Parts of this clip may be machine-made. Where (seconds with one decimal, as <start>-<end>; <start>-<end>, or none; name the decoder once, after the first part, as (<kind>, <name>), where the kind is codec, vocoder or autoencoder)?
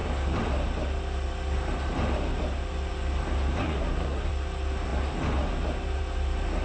3.6-4.3 (codec, SNAC)